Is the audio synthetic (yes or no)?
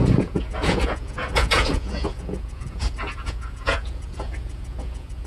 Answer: yes